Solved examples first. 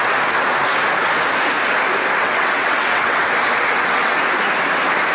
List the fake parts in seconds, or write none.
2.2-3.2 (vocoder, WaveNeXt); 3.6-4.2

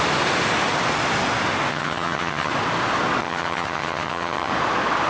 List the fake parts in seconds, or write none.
1.7-2.5 (vocoder, HiFi-GAN); 3.2-4.5

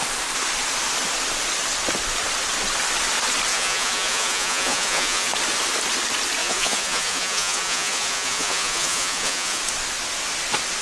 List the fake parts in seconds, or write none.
3.5-5.3 (vocoder, Vocos); 6.4-9.6

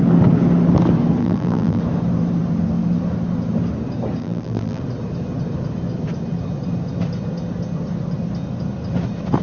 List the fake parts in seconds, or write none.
1.2-1.8 (vocoder, BigVGAN v2); 4.2-4.8